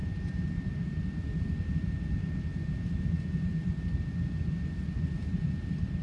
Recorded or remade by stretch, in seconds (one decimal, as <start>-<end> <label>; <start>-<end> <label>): 0.0-6.0 recorded